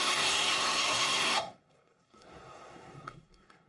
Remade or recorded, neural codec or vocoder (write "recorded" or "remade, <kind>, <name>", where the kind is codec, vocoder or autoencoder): remade, codec, SNAC